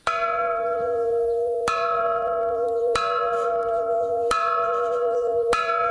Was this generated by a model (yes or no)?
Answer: yes